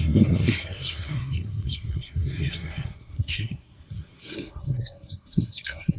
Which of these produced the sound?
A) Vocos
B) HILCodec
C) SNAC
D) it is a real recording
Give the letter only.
C